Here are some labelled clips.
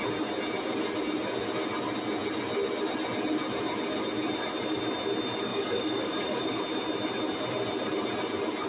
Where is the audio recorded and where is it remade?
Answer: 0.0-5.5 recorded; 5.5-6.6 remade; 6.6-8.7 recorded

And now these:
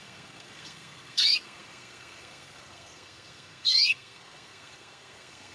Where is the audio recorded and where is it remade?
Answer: 0.0-5.5 remade